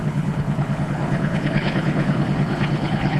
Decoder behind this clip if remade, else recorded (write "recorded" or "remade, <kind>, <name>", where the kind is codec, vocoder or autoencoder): remade, codec, HILCodec